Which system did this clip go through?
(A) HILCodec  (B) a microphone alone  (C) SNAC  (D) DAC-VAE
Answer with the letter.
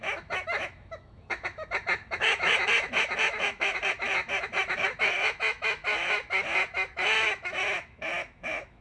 D